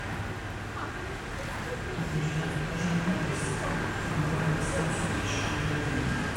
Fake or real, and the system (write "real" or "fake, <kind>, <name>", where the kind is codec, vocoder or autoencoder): real